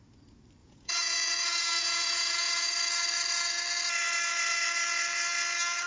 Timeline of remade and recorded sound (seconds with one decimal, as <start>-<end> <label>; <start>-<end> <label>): 0.0-0.6 recorded; 0.6-2.8 remade; 2.8-5.9 recorded